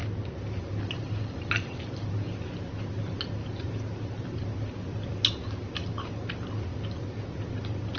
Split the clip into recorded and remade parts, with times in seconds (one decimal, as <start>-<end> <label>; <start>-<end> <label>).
0.0-8.0 recorded